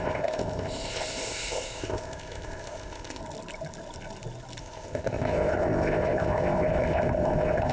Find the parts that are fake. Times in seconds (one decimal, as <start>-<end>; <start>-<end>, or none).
0.0-3.2; 4.6-7.7